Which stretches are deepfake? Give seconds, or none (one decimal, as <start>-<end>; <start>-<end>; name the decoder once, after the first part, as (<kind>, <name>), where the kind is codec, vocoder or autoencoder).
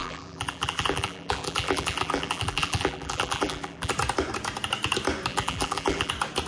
0.0-3.9 (vocoder, BigVGAN v2); 5.3-6.1